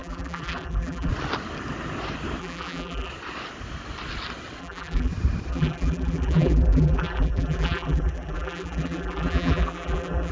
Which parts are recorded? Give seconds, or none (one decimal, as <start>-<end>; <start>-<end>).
1.1-2.4; 3.1-4.6; 5.1-5.5

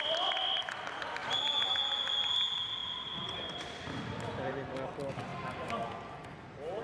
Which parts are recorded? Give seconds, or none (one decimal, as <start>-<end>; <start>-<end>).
0.0-1.2; 1.7-2.8; 4.5-6.8

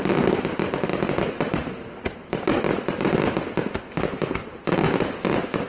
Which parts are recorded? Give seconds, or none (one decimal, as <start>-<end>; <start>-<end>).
0.0-5.7

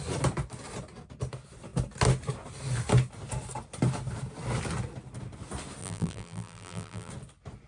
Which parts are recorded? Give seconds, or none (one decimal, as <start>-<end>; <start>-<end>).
0.0-5.8; 7.1-7.7

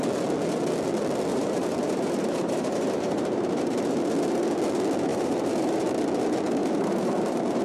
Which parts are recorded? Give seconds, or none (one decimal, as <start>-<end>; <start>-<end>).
0.0-1.3; 4.1-5.1; 5.8-6.6

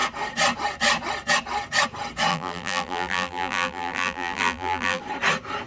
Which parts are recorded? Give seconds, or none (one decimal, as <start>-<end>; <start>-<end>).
0.0-2.3; 5.0-5.7

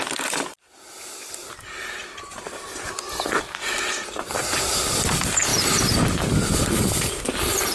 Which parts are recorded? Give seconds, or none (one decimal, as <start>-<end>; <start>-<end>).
0.0-2.0; 4.5-7.7

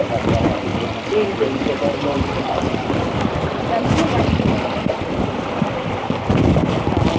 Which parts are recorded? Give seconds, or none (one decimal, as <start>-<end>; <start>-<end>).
0.7-2.4